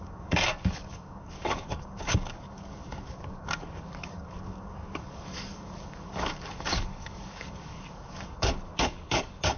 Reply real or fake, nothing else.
fake